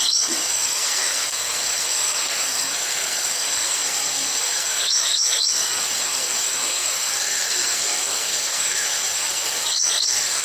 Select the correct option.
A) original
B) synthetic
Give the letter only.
B